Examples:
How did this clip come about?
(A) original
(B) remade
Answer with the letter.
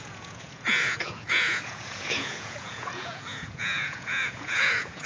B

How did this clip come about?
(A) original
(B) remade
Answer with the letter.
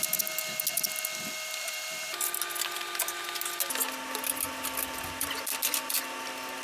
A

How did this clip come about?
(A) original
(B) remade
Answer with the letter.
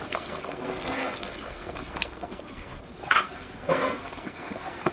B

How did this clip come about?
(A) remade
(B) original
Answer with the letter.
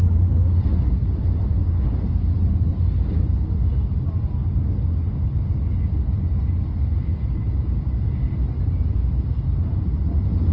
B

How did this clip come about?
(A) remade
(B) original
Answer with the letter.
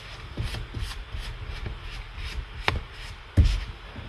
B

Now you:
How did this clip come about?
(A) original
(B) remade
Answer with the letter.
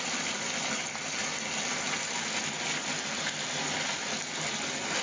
A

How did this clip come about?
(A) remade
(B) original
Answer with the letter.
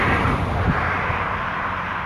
A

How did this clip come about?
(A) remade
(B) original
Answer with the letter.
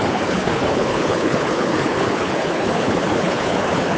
A